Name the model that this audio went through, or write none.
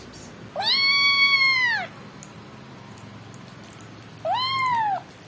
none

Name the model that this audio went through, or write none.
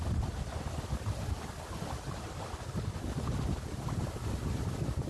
none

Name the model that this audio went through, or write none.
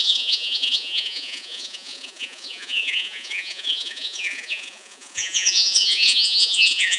vocoder, Vocos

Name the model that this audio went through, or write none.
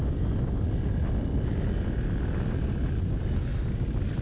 none